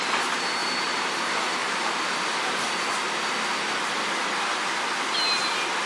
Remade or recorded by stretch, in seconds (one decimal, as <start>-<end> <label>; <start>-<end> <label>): 0.0-0.6 recorded; 0.6-1.2 remade; 1.2-1.6 recorded; 1.6-2.7 remade; 2.7-5.9 recorded